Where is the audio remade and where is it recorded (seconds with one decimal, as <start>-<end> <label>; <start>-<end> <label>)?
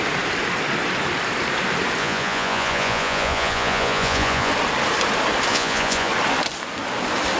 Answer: 0.0-2.0 recorded; 2.0-4.5 remade; 4.5-5.5 recorded; 5.5-6.1 remade; 6.1-7.4 recorded